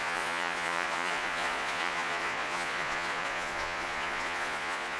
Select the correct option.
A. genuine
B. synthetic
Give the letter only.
B